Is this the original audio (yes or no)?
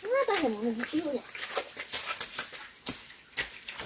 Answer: yes